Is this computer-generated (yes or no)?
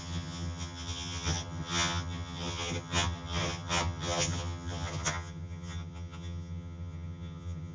yes